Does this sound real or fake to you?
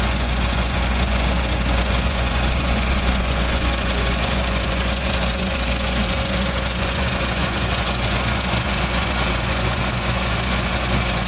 fake